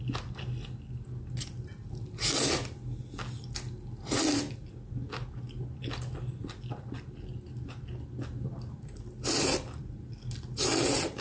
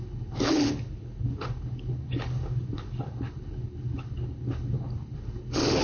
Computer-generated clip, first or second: second